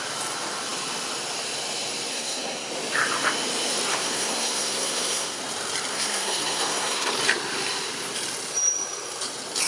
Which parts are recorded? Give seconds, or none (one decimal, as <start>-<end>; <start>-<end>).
0.0-2.1; 2.7-3.9; 5.4-5.9; 7.1-9.7

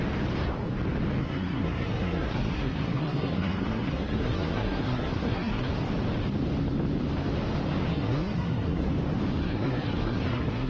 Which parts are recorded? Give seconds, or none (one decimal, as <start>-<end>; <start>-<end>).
0.0-1.2; 5.7-7.9; 8.9-9.4

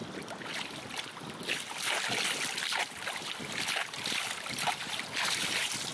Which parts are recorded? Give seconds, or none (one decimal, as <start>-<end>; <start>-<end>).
0.0-5.9

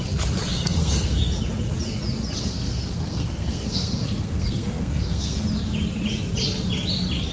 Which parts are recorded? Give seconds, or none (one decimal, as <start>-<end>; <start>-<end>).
0.0-0.5; 1.2-2.4; 5.4-7.3

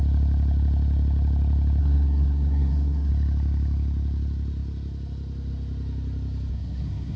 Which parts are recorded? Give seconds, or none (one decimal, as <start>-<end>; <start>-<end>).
0.0-1.8; 3.1-6.5

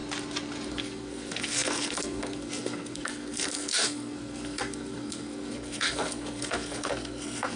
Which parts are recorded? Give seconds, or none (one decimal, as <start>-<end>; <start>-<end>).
0.0-0.7

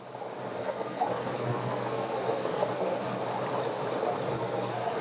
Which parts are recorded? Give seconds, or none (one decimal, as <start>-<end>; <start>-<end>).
0.0-0.6; 3.2-4.3

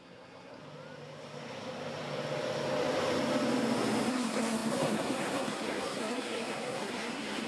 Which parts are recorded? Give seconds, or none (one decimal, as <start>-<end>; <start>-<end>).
0.6-4.1